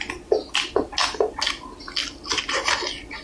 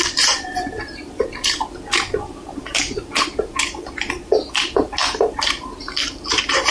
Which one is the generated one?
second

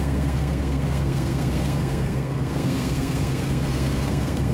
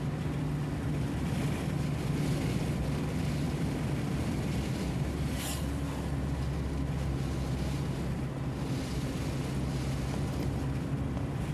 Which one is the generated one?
first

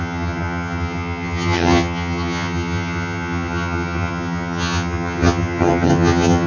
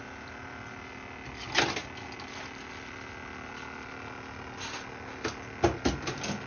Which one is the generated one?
first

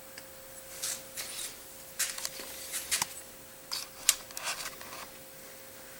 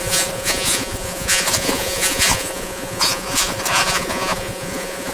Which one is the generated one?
second